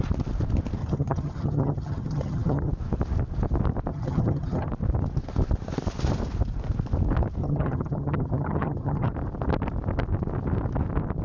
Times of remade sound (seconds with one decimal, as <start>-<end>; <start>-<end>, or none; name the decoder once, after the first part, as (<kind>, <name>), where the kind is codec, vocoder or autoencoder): 0.8-2.7 (vocoder, HiFi-GAN); 3.9-4.7; 7.4-9.1